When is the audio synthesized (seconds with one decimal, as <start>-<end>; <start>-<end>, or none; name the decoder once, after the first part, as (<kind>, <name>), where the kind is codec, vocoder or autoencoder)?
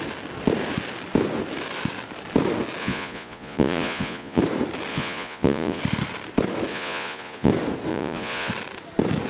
2.8-4.4 (vocoder, Vocos); 4.9-5.8; 6.7-7.5; 7.9-8.5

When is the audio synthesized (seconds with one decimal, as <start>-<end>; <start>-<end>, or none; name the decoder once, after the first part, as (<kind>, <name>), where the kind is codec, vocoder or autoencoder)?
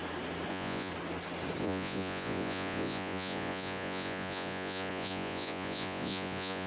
0.5-0.9 (vocoder, Vocos); 1.6-6.7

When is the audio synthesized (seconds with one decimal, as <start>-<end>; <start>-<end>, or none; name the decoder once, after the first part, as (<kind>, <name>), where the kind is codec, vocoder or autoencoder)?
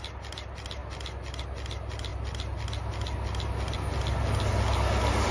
none